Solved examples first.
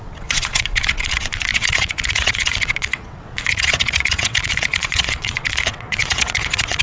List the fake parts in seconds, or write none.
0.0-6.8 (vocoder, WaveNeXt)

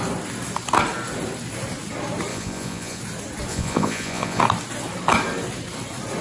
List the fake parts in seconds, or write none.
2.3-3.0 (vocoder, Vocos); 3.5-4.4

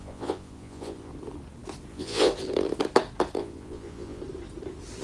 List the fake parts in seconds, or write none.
0.0-1.1 (vocoder, Vocos); 1.9-2.3; 3.4-4.2